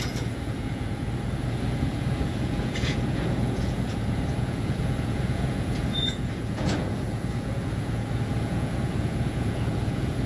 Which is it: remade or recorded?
remade